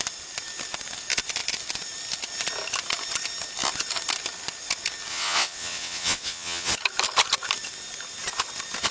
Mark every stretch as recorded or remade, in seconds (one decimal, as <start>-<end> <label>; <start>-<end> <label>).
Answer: 0.0-5.1 recorded; 5.1-6.7 remade; 6.7-8.9 recorded